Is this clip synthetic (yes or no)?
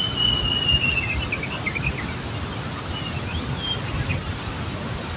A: no